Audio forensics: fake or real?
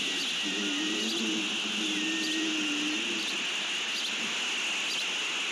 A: real